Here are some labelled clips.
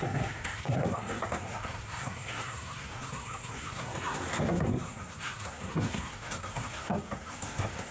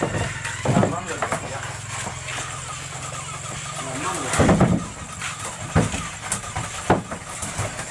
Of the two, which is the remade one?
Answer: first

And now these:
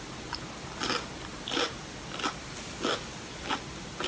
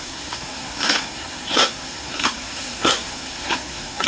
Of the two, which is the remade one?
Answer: second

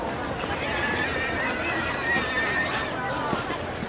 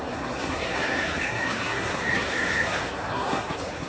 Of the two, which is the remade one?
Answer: second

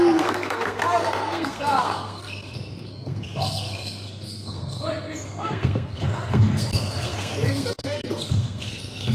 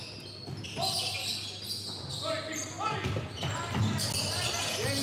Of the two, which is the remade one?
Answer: first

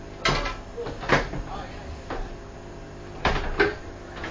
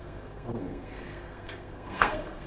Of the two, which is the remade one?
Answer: second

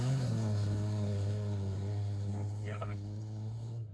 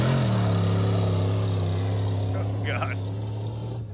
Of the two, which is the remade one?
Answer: first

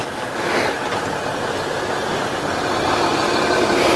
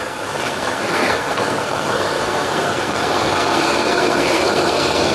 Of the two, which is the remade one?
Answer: second